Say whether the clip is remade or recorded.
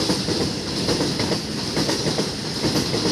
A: recorded